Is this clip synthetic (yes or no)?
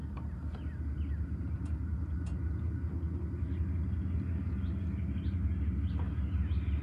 no